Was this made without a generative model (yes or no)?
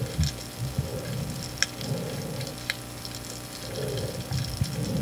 yes